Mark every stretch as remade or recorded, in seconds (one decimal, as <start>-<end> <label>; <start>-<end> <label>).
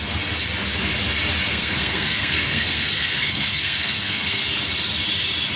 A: 0.0-1.5 recorded; 1.5-4.4 remade; 4.4-5.6 recorded